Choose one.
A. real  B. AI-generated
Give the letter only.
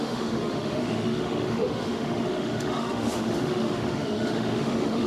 B